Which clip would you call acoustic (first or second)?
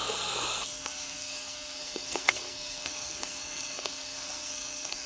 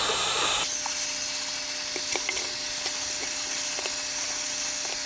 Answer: second